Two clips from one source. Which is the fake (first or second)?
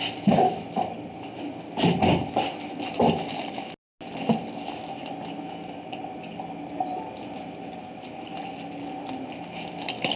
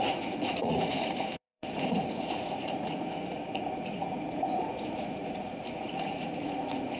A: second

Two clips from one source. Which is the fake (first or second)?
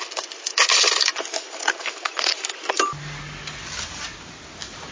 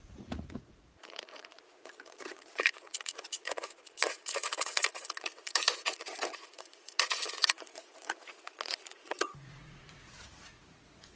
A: second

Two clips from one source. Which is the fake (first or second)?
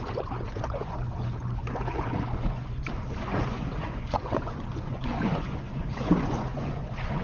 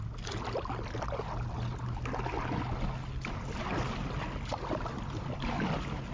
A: first